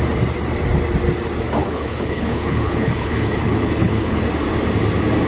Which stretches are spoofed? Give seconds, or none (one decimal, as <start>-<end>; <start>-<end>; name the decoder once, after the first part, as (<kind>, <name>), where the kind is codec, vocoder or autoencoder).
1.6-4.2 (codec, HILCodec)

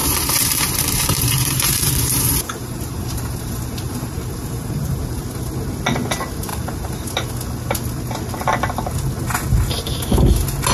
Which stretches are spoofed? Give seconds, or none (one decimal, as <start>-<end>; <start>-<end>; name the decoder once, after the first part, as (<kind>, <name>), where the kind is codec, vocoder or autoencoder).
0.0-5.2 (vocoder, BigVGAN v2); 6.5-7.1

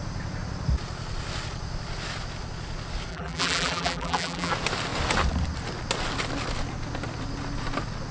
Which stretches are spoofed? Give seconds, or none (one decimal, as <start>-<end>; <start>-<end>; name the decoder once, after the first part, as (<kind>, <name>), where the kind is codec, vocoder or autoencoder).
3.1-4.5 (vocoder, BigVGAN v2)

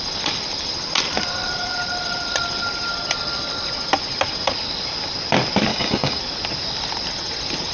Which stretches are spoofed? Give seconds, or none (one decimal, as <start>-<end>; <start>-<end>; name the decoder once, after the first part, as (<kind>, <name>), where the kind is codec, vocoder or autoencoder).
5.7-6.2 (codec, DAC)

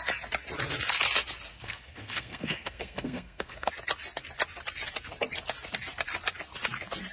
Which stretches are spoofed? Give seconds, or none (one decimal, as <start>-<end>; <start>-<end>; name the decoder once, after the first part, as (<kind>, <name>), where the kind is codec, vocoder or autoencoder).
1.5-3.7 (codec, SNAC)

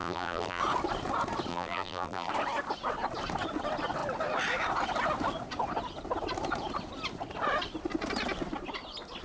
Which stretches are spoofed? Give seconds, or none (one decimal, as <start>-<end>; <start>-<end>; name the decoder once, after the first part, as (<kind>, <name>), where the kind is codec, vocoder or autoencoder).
0.0-0.6 (vocoder, BigVGAN v2); 1.5-2.3